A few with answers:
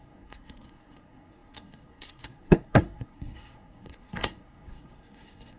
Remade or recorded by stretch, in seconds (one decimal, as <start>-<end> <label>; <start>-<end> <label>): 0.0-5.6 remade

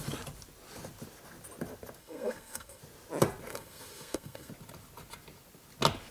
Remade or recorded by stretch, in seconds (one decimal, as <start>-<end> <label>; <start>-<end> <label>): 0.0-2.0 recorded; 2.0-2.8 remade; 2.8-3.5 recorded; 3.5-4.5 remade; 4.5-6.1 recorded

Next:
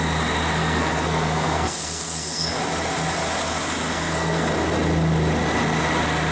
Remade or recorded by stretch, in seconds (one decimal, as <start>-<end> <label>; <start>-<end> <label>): 0.0-0.6 recorded; 0.6-2.5 remade; 2.5-3.9 recorded; 3.9-4.5 remade; 4.5-6.3 recorded

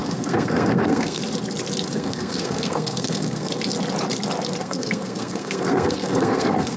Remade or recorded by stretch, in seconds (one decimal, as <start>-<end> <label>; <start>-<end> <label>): 0.0-1.2 remade; 1.2-1.9 recorded; 1.9-3.5 remade; 3.5-4.6 recorded; 4.6-6.8 remade